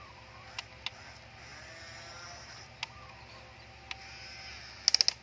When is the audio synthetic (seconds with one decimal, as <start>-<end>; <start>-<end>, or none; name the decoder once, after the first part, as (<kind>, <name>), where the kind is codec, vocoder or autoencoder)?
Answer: none